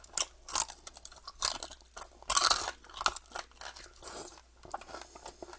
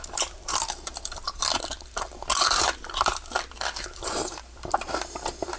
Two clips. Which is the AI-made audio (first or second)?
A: second